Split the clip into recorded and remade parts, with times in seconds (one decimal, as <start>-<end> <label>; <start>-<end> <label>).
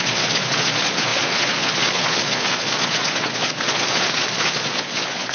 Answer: 0.0-5.3 remade